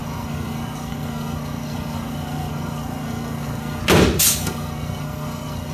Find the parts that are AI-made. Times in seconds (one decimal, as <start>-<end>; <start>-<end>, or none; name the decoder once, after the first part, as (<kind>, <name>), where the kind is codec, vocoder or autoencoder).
0.0-3.8 (codec, SNAC); 4.4-5.7